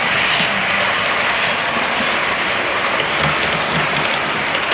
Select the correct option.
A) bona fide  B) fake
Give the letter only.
A